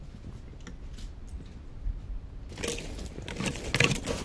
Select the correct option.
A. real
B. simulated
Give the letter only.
A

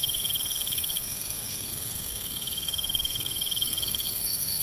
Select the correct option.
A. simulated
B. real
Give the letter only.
A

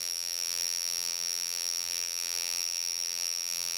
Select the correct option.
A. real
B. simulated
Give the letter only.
B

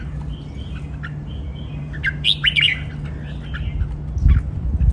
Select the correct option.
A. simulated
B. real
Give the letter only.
B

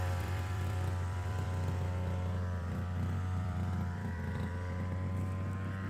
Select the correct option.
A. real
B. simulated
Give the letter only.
B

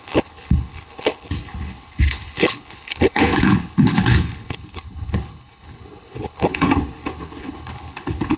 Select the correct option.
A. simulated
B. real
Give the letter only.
A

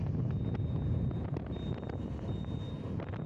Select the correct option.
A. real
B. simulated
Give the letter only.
A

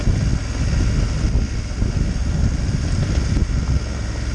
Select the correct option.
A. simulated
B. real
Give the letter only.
B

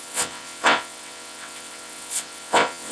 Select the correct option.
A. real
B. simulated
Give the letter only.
B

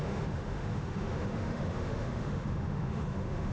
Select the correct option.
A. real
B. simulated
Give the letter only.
B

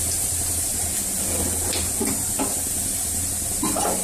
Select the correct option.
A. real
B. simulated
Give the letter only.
A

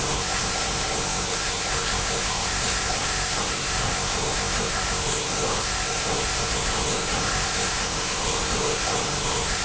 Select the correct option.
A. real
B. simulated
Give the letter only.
B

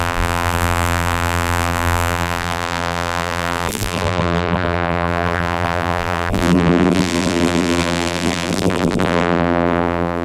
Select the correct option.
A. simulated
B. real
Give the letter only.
A